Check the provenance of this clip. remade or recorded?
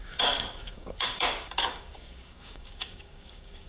remade